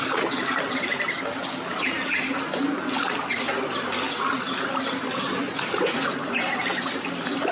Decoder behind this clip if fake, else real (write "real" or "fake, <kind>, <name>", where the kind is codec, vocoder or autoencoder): real